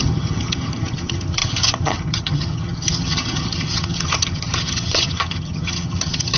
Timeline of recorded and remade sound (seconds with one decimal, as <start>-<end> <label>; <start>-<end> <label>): 0.0-6.4 remade